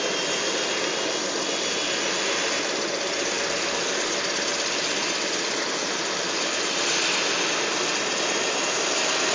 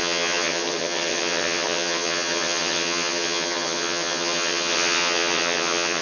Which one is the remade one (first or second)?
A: second